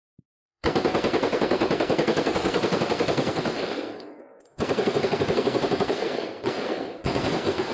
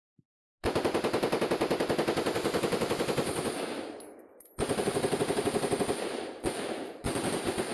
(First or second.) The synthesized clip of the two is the first